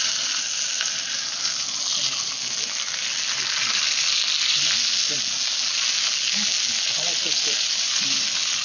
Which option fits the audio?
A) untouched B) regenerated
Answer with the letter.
A